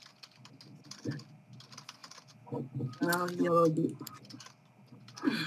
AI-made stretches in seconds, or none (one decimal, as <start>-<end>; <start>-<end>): none